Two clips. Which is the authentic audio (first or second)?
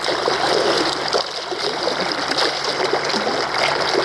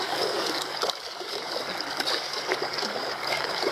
first